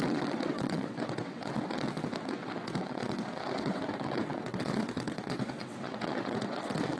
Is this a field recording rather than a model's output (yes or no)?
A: no